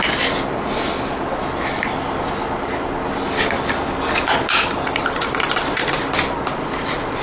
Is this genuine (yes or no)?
yes